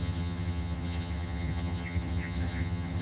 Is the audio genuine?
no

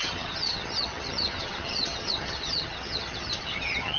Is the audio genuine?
no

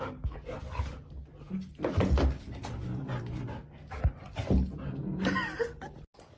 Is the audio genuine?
yes